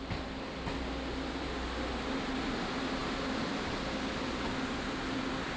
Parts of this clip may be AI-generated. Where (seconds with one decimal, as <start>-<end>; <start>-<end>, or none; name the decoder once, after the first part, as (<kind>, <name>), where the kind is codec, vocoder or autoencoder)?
none